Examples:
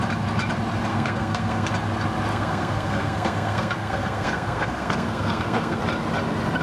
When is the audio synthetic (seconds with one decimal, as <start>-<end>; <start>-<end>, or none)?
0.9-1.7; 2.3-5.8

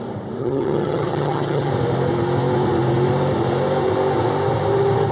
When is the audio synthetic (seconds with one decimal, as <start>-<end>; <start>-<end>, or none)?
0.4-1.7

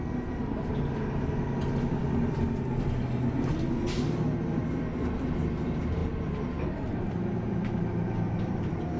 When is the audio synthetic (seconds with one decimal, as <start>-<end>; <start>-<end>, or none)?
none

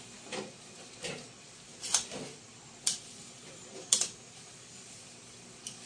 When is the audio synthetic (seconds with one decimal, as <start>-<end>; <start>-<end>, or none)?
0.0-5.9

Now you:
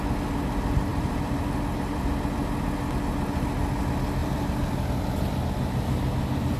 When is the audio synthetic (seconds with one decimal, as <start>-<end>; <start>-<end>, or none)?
0.9-2.1; 4.2-4.8

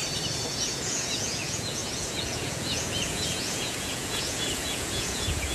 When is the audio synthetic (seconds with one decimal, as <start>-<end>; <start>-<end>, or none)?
0.5-5.5